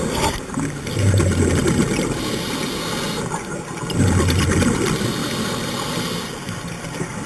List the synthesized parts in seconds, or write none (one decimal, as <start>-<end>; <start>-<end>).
none

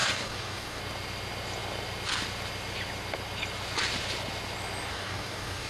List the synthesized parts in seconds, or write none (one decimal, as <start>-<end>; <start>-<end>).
0.0-0.8; 4.9-5.7

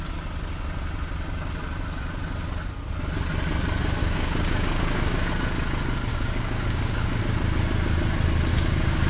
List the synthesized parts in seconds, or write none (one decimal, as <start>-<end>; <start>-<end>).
4.0-5.3; 6.1-7.2; 8.5-9.1

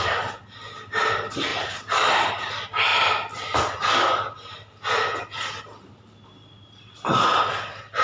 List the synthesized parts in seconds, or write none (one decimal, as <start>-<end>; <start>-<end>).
none

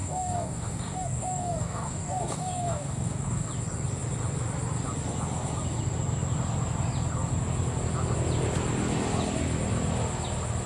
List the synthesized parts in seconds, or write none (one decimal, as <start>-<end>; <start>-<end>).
0.0-3.5

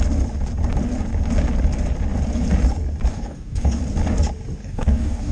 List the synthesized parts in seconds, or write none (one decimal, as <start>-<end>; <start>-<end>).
3.1-3.8; 4.6-5.3